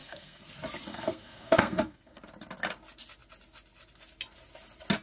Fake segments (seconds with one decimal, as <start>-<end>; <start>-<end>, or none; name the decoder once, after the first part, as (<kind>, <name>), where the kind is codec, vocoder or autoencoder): 0.0-0.5 (codec, SNAC); 0.9-2.2